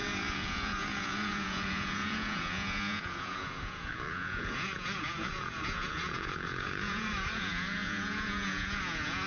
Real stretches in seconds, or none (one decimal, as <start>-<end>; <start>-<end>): none